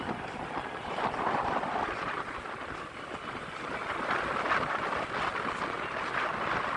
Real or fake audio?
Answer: fake